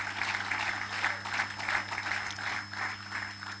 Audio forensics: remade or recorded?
recorded